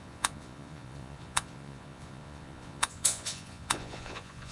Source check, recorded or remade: remade